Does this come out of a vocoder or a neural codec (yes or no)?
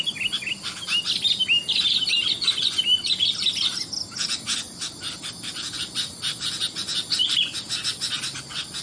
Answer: no